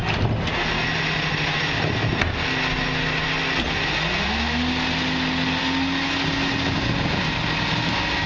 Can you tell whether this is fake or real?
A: real